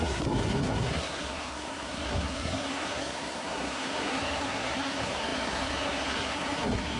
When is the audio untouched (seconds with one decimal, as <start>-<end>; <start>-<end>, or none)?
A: none